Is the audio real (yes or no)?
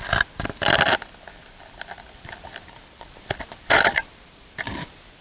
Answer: no